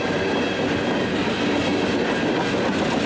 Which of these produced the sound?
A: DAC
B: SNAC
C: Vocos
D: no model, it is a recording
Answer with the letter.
D